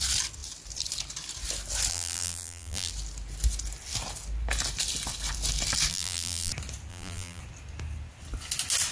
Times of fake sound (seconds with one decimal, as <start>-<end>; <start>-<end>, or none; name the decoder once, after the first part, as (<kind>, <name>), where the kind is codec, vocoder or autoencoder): 1.9-2.9 (vocoder, BigVGAN v2); 5.9-6.5; 6.9-7.4